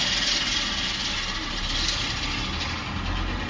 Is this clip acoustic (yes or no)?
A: yes